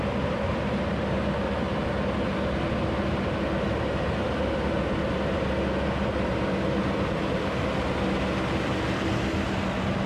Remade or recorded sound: recorded